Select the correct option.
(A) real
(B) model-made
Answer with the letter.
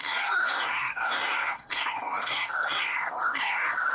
B